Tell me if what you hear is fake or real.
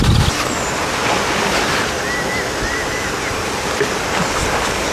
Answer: real